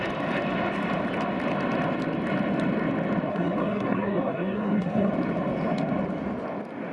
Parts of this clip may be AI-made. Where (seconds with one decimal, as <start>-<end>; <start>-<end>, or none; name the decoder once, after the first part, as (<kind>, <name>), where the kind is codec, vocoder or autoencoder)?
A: 3.3-5.1 (codec, SNAC)